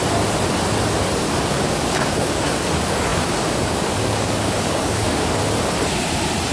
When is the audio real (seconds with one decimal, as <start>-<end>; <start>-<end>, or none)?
0.0-1.2; 5.4-6.5